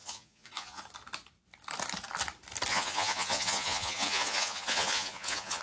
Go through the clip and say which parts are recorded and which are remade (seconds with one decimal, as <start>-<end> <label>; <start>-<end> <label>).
0.0-0.8 remade; 0.8-2.7 recorded; 2.7-5.6 remade